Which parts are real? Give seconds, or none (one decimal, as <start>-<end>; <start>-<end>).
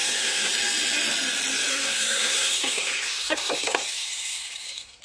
0.5-1.7